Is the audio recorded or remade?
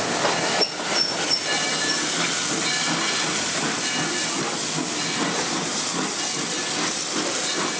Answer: recorded